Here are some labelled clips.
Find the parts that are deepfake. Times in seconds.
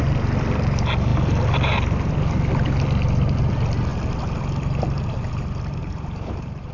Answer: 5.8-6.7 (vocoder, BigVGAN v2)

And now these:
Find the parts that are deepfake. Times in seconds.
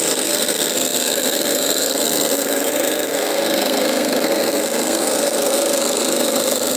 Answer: 0.0-6.8 (codec, SNAC)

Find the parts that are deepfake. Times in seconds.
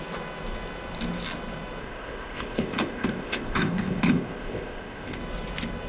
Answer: 1.8-5.2 (codec, ZipCodec)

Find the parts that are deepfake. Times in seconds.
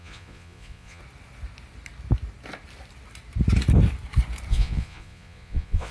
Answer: 0.0-1.0 (vocoder, Vocos); 4.5-5.9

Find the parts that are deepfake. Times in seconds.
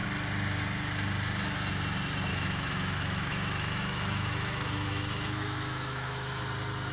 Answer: 2.3-6.4 (autoencoder, DAC-VAE)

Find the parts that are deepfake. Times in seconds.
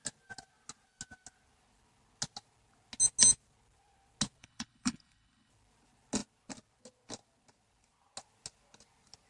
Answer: 4.4-5.5 (codec, HILCodec)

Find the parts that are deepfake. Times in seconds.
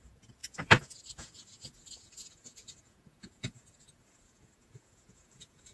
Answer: 0.0-5.7 (vocoder, Vocos)